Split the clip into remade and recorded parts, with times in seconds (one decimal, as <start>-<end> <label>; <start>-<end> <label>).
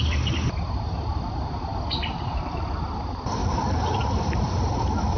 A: 0.0-3.4 recorded; 3.4-4.0 remade; 4.0-5.2 recorded